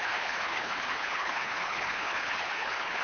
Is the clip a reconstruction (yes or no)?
yes